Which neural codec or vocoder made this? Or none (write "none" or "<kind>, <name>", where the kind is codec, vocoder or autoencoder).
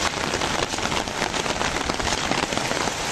none